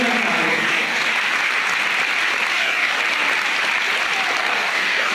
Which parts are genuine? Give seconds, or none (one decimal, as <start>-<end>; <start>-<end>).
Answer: 0.0-0.5; 1.1-2.5; 3.0-4.4